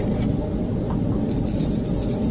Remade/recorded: recorded